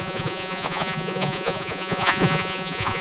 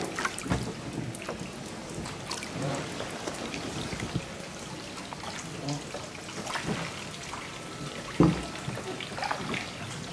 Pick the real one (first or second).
second